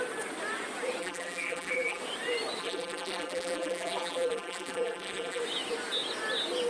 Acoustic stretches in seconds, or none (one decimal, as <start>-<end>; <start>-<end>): 0.0-1.0; 2.0-2.6; 5.4-6.7